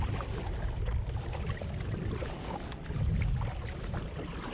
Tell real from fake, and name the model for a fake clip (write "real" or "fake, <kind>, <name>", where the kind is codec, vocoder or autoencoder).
real